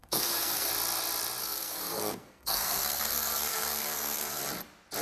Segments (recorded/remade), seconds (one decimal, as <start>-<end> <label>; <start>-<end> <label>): 0.0-0.7 remade; 0.7-1.4 recorded; 1.4-4.4 remade; 4.4-5.0 recorded